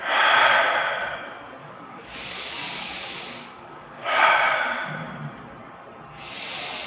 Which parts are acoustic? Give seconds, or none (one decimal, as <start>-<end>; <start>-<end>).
0.0-1.6; 4.2-6.9